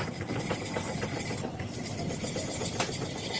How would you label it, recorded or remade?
recorded